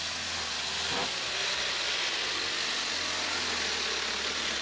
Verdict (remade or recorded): recorded